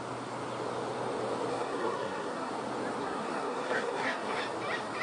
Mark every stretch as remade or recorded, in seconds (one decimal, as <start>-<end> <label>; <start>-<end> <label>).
0.0-1.5 recorded; 1.5-2.5 remade; 2.5-3.0 recorded; 3.0-4.4 remade; 4.4-5.0 recorded